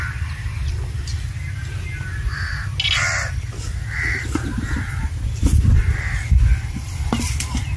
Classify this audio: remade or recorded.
recorded